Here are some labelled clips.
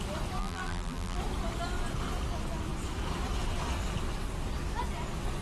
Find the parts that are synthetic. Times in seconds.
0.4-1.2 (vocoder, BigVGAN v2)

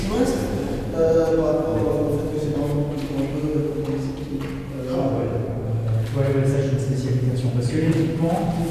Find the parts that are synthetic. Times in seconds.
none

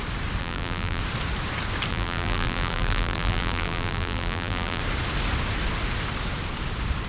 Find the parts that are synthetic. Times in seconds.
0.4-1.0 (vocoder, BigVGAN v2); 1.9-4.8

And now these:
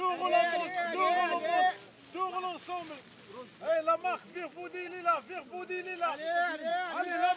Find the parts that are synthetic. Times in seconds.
none

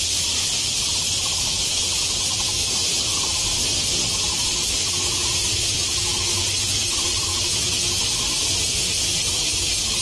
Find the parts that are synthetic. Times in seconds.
2.6-3.5 (vocoder, BigVGAN v2); 5.2-6.1

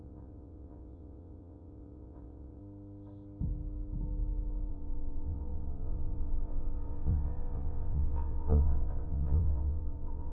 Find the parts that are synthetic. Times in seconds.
0.0-2.6 (vocoder, WaveNeXt); 4.7-10.3

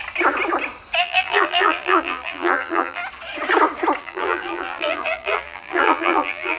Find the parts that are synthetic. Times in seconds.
1.0-3.0 (vocoder, BigVGAN v2); 4.0-6.6